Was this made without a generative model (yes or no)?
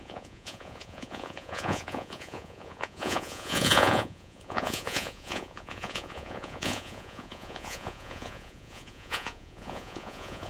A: no